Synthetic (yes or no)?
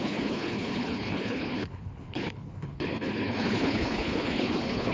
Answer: yes